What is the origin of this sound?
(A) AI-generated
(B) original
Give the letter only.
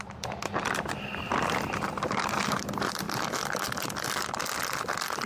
B